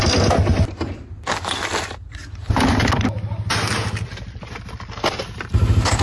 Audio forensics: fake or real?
real